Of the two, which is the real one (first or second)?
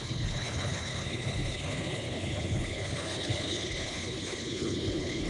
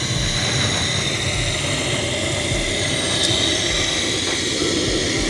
second